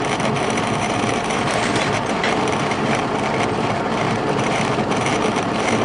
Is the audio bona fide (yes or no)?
no